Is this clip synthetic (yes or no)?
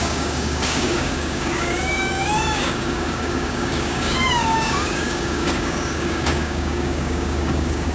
yes